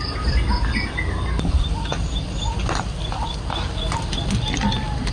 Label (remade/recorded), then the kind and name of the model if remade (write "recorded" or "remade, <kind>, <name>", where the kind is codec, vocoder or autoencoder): recorded